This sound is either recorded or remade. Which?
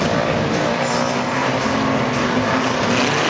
recorded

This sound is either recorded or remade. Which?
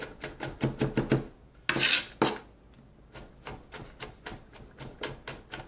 recorded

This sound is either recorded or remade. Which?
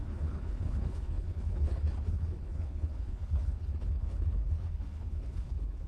remade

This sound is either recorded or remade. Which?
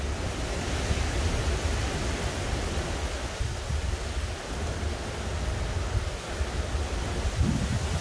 recorded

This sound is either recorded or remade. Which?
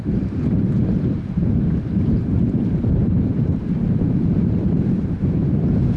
remade